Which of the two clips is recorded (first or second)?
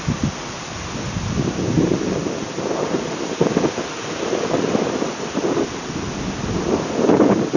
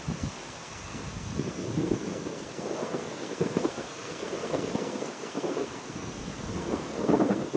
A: first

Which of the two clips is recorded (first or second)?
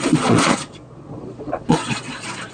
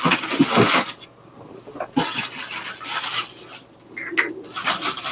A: second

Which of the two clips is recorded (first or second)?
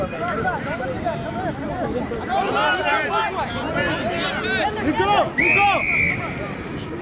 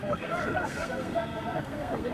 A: first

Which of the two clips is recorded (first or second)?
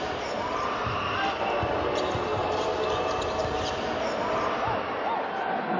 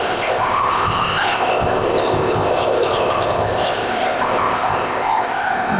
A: first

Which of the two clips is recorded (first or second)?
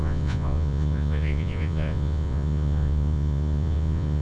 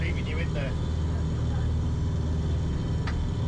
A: second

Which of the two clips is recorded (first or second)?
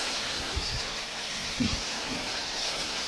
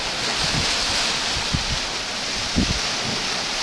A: second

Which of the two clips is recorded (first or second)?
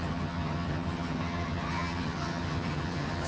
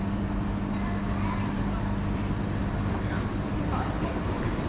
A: second